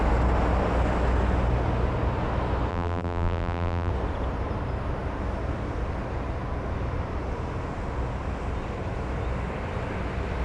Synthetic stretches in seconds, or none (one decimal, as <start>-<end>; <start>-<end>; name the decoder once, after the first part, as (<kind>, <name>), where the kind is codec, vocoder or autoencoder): 2.7-3.9 (vocoder, BigVGAN v2)

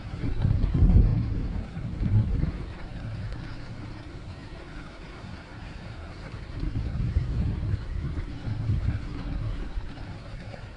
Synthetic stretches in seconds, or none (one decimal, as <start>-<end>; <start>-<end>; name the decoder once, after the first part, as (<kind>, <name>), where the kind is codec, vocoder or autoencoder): 0.0-10.8 (codec, SNAC)

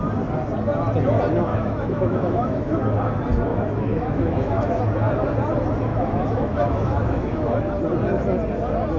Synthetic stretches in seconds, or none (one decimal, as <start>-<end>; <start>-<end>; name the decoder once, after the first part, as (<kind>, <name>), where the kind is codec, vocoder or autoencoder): 1.5-2.8 (autoencoder, DAC-VAE); 3.5-4.8; 5.9-7.6

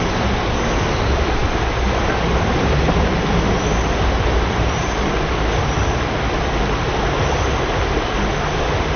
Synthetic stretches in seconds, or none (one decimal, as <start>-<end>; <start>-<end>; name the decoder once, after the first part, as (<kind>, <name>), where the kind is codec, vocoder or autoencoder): none

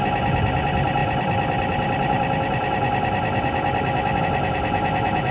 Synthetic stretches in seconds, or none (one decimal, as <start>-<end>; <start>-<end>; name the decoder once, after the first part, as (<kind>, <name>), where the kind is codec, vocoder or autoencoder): 1.0-4.2 (vocoder, BigVGAN v2)